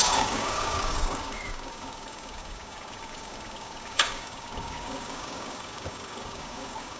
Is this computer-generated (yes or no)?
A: yes